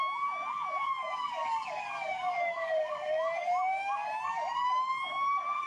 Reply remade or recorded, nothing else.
remade